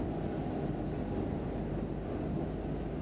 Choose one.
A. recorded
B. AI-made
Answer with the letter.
A